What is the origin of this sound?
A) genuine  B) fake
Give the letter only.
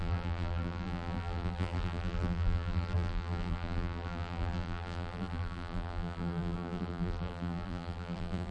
B